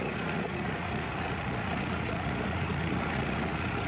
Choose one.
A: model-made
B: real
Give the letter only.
A